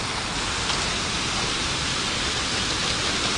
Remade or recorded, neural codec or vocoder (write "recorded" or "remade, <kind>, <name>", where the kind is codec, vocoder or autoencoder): recorded